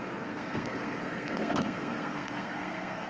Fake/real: fake